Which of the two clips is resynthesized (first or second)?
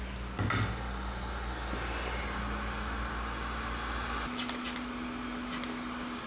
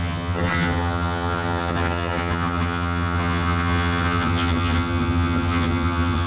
second